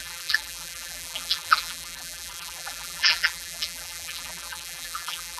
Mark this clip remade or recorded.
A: remade